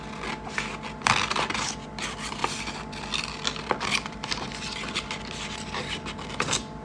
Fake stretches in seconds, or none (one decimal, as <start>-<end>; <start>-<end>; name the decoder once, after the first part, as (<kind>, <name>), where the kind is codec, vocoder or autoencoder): none